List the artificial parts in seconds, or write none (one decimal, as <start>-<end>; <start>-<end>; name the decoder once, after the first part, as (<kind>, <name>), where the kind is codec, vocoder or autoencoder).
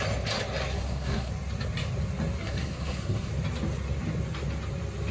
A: 0.7-1.3 (codec, SNAC); 2.4-3.3